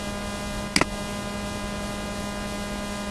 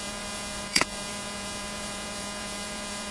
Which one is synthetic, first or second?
second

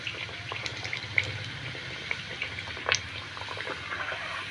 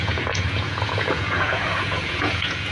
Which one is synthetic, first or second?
second